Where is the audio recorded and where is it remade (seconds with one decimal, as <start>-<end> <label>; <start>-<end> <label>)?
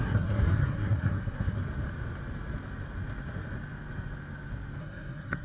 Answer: 0.0-1.6 remade; 1.6-4.8 recorded; 4.8-5.4 remade